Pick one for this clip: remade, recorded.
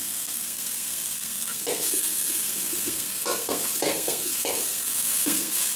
remade